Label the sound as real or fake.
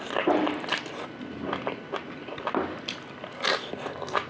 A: real